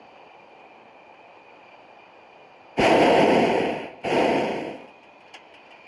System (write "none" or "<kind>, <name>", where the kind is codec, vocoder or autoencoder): vocoder, BigVGAN v2